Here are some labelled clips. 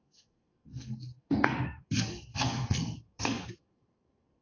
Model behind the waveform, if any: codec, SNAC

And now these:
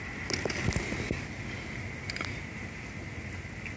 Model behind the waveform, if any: none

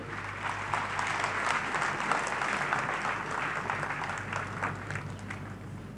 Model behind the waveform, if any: none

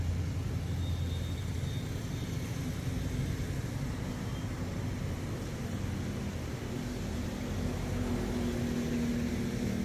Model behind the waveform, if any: none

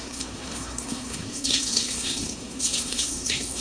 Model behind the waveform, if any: codec, SNAC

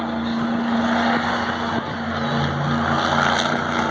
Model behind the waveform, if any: none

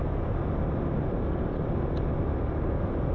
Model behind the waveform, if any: none